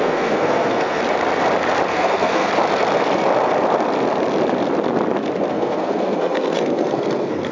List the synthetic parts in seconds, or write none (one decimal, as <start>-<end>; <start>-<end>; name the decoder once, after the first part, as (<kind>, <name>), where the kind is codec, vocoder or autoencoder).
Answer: 0.0-1.0 (codec, SNAC); 1.9-2.5; 5.5-7.5